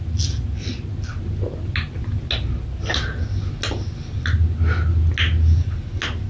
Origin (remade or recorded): recorded